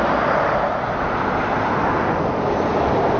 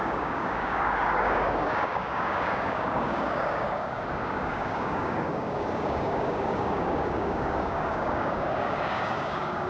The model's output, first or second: second